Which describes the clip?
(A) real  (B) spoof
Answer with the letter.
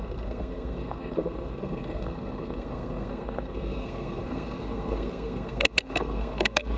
B